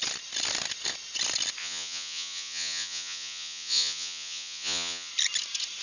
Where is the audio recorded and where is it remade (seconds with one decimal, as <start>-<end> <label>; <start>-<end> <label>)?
0.0-1.6 recorded; 1.6-5.1 remade; 5.1-5.8 recorded